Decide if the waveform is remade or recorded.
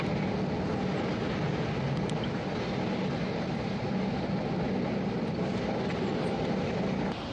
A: recorded